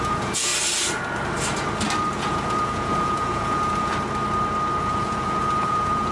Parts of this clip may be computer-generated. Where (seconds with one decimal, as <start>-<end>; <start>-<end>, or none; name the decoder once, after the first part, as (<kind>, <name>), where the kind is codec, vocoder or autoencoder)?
0.0-0.5 (vocoder, Vocos); 2.1-3.9; 4.8-6.1